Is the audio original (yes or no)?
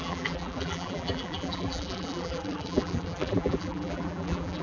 no